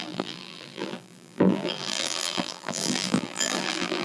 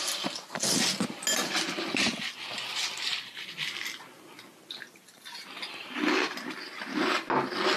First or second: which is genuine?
second